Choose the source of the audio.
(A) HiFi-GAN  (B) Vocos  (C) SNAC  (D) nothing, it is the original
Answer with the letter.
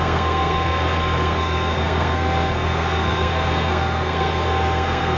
C